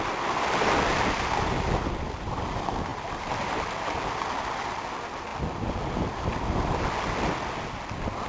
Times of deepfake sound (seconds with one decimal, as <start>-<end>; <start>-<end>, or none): none